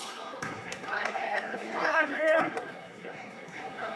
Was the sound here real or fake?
fake